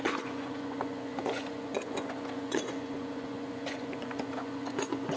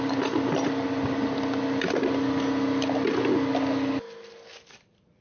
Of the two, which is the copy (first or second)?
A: first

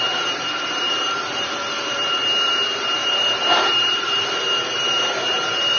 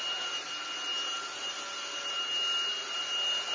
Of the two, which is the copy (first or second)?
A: first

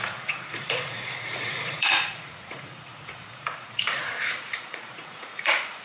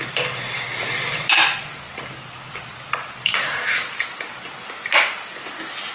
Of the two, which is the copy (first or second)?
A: first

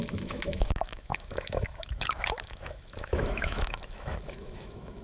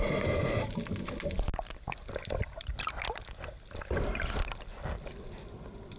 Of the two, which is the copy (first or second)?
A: first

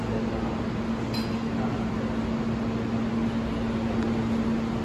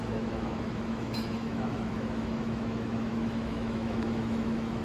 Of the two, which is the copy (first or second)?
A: second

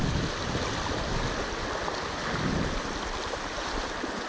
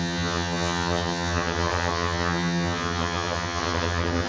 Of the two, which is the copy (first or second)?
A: second